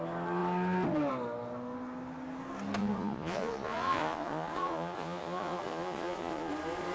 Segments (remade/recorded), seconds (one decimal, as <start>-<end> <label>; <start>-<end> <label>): 0.0-2.8 recorded; 2.8-6.5 remade; 6.5-6.9 recorded